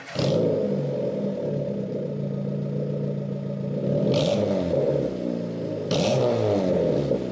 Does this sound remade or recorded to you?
recorded